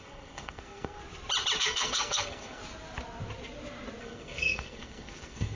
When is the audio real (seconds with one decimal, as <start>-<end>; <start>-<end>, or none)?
1.0-1.6; 2.6-4.0